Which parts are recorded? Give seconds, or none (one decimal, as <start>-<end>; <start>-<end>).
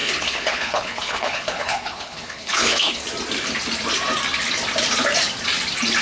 3.0-6.0